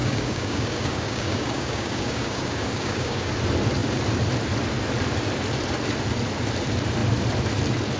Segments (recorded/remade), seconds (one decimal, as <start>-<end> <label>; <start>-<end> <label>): 0.0-3.3 remade; 3.3-8.0 recorded